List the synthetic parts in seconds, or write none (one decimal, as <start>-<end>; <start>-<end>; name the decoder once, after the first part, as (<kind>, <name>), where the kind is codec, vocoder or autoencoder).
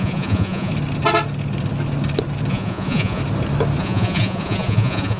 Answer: 0.0-0.7 (vocoder, Vocos); 2.5-3.2; 3.8-5.2